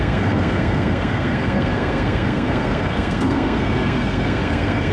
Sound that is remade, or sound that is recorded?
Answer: remade